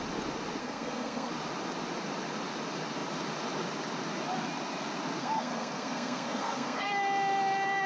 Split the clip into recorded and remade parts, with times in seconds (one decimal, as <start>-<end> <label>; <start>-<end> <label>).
0.0-0.6 recorded; 0.6-1.3 remade; 1.3-5.2 recorded; 5.2-6.9 remade; 6.9-7.9 recorded